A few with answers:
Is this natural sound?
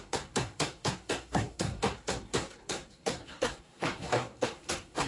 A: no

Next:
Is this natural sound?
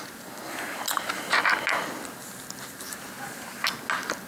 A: yes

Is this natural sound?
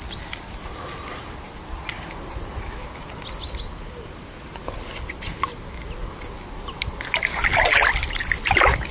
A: yes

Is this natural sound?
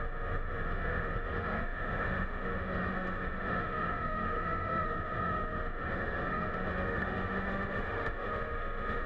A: no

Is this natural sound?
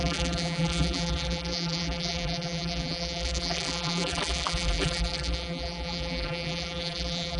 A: no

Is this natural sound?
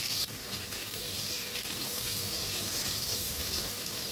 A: no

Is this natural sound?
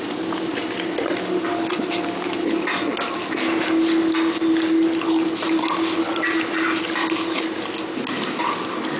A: yes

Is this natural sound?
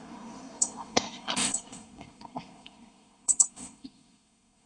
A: no